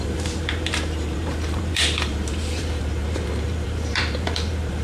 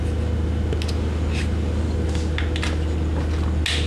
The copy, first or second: first